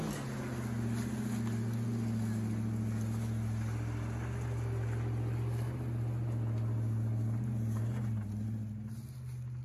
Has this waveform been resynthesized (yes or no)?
no